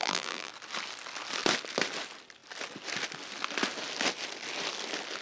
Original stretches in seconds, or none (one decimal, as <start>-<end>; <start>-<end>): 0.5-5.2